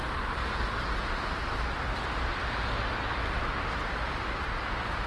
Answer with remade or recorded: recorded